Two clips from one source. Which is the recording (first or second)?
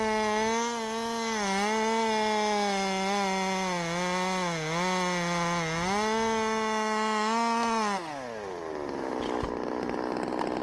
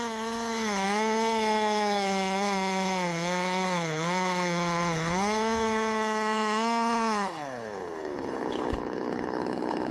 first